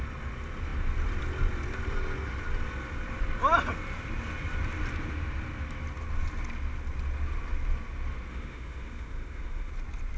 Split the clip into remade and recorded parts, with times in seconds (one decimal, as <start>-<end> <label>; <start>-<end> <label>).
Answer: 0.0-8.3 recorded; 8.3-9.7 remade; 9.7-10.2 recorded